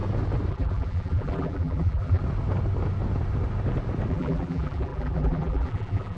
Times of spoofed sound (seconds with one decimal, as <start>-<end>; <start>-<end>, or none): 0.5-2.2; 4.1-6.2